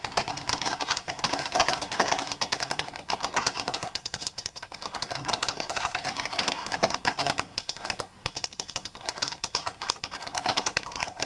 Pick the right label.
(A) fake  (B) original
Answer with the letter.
A